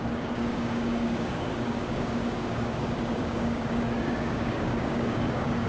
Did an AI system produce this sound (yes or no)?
yes